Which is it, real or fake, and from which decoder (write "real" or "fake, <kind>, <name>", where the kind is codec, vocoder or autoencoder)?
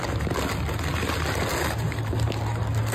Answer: real